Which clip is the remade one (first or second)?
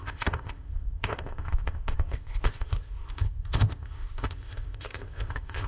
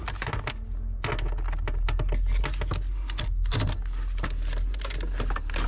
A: first